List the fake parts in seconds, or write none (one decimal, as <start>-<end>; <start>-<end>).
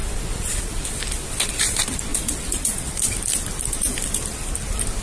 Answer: none